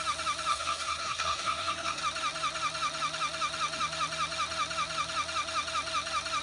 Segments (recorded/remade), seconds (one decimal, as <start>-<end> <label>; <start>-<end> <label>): 0.0-0.5 recorded; 0.5-2.0 remade; 2.0-6.4 recorded